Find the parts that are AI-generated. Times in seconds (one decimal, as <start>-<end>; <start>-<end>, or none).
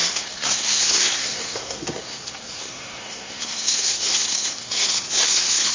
0.0-5.7